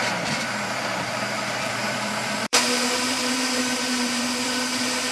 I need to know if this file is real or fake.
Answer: fake